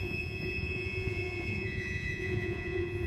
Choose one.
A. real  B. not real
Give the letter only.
B